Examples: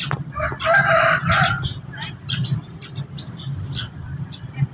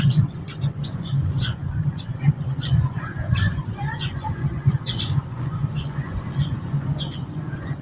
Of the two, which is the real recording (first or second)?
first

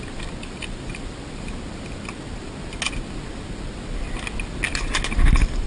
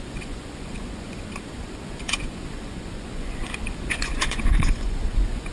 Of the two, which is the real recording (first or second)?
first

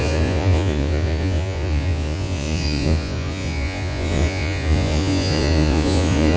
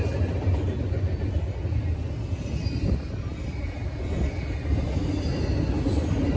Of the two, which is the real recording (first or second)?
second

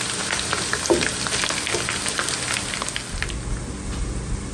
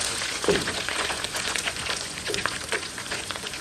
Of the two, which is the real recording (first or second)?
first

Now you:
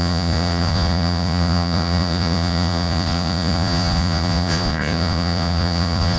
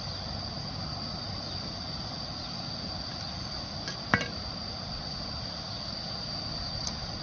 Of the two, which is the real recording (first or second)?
second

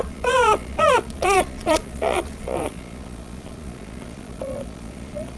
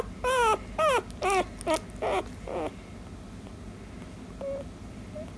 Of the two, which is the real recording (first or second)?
second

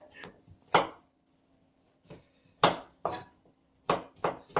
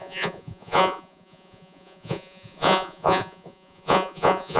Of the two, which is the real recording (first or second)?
first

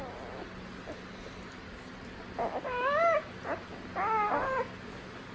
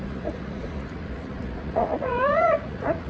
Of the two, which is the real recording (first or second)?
first